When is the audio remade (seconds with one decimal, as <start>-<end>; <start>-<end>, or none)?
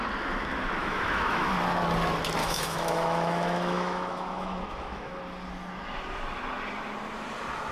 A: 0.8-1.5; 2.4-5.2